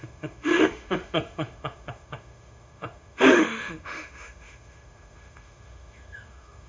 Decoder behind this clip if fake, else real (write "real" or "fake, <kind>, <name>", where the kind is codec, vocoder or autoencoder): fake, autoencoder, DAC-VAE